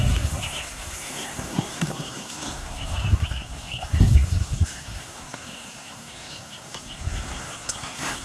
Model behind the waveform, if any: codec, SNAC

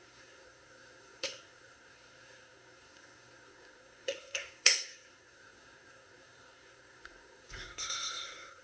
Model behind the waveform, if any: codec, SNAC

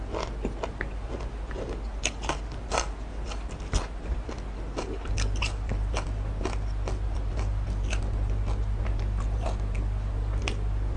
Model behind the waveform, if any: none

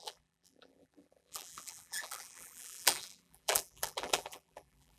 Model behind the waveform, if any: vocoder, BigVGAN v2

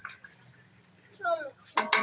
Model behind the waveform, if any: none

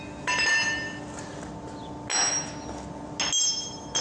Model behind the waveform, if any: none